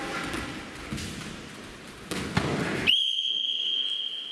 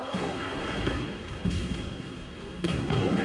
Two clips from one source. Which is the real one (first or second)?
first